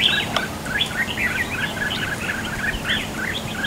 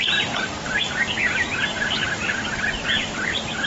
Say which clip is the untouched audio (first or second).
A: first